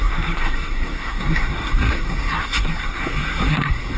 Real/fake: fake